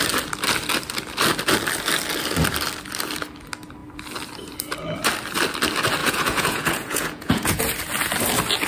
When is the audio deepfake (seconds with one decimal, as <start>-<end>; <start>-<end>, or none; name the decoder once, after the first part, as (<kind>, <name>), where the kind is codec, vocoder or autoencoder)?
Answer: 6.0-7.6 (vocoder, Vocos)